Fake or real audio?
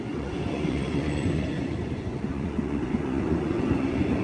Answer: fake